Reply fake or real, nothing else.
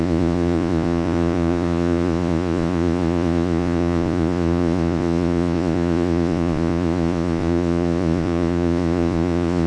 fake